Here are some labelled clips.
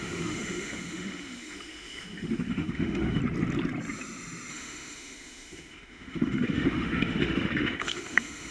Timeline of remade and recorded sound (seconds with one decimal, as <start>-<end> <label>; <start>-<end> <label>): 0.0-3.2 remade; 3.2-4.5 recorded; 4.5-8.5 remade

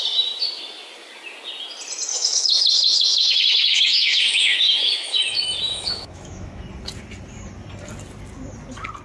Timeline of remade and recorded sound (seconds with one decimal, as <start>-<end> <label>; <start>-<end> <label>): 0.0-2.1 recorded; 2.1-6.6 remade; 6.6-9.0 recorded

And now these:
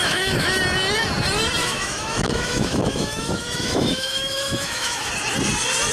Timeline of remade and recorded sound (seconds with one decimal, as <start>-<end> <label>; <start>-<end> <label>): 0.0-0.6 remade; 0.6-1.6 recorded; 1.6-5.1 remade; 5.1-5.9 recorded